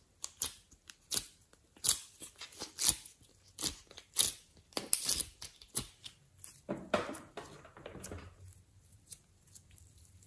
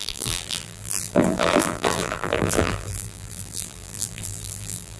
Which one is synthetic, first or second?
second